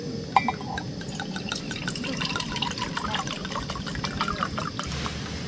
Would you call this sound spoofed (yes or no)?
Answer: no